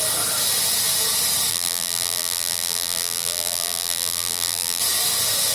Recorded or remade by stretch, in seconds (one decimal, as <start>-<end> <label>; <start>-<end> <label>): 0.0-1.5 recorded; 1.5-4.8 remade; 4.8-5.5 recorded